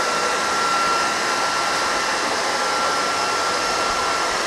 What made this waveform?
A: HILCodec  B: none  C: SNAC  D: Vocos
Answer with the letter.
B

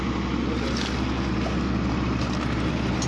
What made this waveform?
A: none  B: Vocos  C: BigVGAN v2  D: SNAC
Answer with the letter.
A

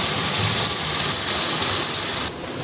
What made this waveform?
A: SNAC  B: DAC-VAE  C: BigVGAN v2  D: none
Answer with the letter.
D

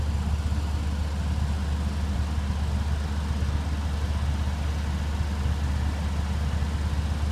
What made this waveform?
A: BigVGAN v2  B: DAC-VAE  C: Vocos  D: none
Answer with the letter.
D